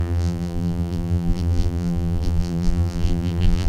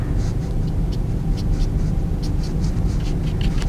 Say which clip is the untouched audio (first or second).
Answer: second